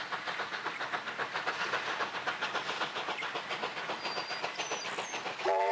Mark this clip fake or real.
real